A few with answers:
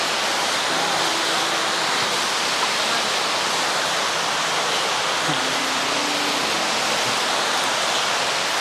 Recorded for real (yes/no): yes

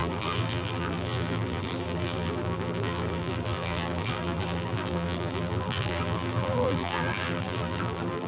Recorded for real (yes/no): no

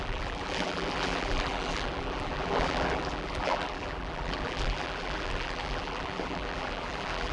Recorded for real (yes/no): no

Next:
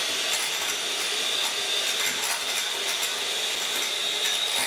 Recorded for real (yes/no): yes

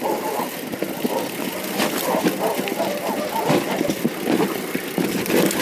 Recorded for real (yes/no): yes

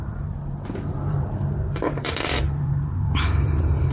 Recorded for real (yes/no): no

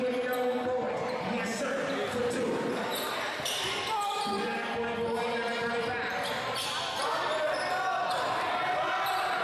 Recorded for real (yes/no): yes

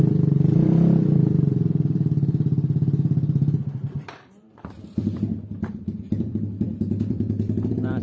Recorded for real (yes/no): no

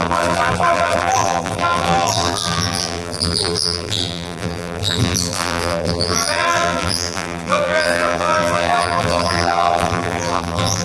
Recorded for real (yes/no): no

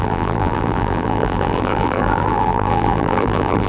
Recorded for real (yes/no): no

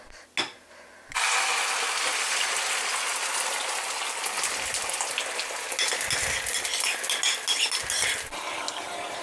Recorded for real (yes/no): yes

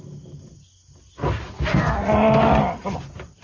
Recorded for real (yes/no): yes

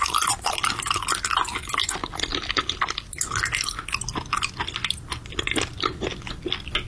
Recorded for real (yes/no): yes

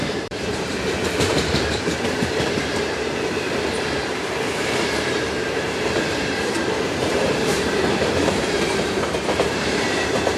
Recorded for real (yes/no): no